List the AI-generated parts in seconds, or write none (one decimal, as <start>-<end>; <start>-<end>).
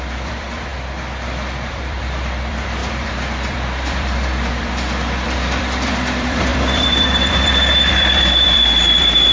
0.0-0.7; 1.7-9.3